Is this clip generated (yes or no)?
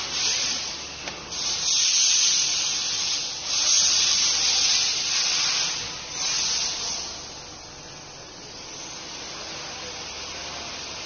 no